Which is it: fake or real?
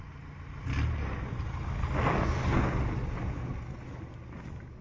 real